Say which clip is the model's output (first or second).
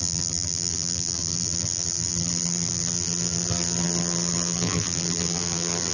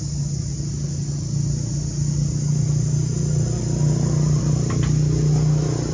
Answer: first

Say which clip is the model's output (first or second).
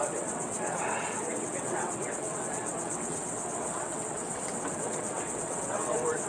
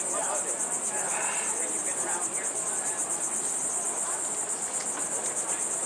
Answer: first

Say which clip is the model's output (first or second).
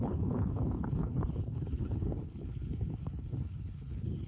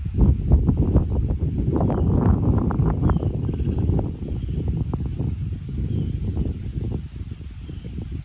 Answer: first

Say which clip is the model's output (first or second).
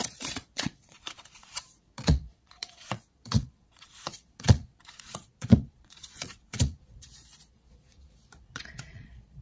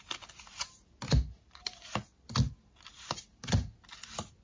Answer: first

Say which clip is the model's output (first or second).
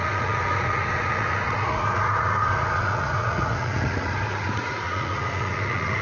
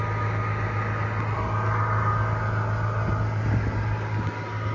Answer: first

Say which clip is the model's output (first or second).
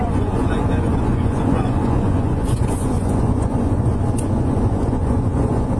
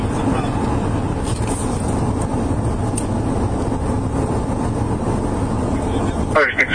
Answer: first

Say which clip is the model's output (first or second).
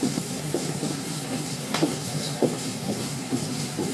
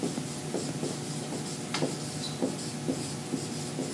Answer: first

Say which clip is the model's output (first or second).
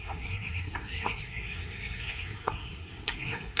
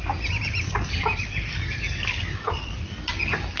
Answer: first